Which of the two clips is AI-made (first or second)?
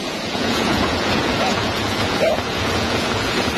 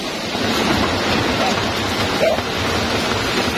first